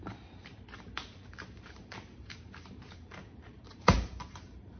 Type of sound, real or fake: fake